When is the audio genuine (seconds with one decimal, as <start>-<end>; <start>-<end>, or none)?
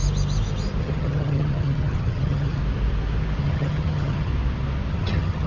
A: 0.0-0.8; 2.6-3.4; 4.3-4.9